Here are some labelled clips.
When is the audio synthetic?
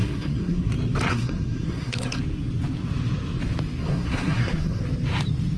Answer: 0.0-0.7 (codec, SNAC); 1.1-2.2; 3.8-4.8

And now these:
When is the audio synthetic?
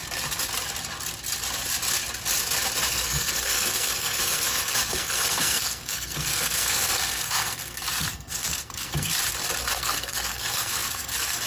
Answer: 2.9-9.1 (codec, SNAC); 9.7-11.5